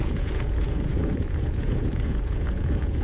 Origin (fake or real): fake